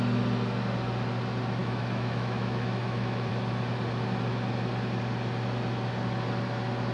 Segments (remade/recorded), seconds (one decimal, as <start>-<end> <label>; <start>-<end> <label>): 0.0-1.6 recorded; 1.6-3.3 remade; 3.3-6.9 recorded